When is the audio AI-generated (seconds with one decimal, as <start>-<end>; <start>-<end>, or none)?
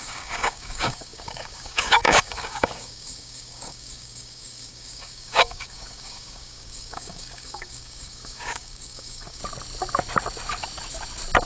0.0-9.4